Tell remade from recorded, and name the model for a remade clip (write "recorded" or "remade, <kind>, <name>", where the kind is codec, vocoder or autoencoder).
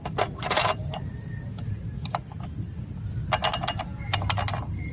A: recorded